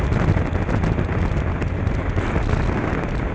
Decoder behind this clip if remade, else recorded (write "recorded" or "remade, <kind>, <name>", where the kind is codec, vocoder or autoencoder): recorded